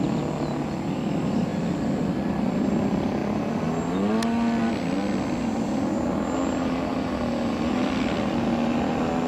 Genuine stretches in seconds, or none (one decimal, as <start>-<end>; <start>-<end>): 0.0-9.3

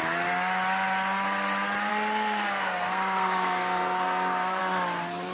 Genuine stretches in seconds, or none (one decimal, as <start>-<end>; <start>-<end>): 0.0-1.9; 4.6-5.3